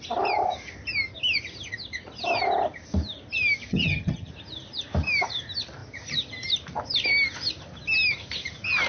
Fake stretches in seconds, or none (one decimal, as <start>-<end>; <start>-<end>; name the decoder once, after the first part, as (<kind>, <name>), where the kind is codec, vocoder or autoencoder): 3.7-4.3 (vocoder, HiFi-GAN)